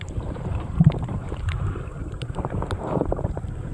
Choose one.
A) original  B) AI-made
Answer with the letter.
B